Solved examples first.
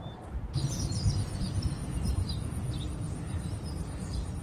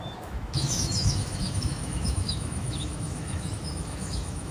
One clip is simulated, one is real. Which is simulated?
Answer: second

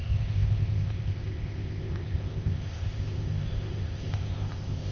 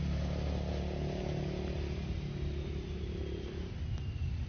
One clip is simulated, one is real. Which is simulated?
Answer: first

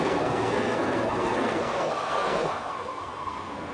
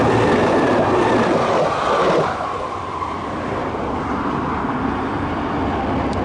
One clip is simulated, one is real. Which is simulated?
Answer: first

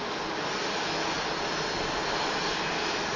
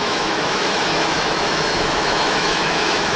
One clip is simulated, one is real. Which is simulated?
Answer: second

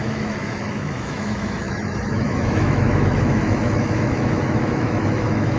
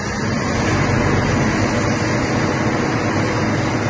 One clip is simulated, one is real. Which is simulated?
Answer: first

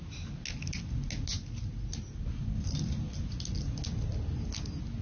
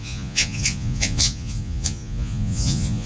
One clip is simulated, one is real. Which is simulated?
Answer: second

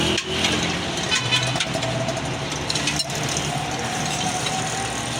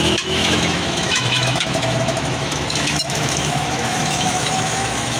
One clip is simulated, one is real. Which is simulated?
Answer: second